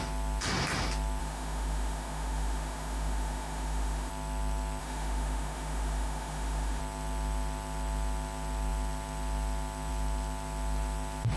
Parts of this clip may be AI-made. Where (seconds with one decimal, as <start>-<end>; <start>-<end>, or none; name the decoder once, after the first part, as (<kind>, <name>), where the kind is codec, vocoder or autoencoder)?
1.2-4.1 (autoencoder, DAC-VAE); 4.8-6.8